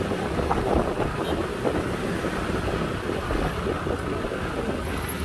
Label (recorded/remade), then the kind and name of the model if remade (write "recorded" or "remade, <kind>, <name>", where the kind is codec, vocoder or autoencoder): recorded